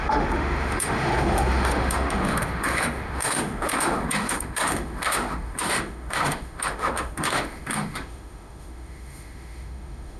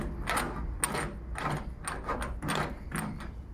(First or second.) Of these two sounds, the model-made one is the first